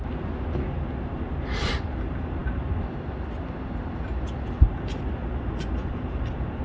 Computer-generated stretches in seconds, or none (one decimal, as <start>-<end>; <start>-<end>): none